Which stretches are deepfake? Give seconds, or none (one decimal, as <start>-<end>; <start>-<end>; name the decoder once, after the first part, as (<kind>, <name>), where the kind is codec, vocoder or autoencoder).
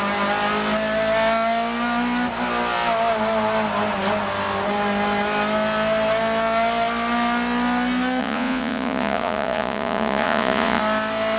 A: 8.2-10.8 (vocoder, Vocos)